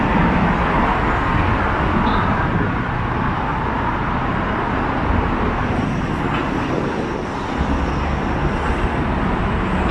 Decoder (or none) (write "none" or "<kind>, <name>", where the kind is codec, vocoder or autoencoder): none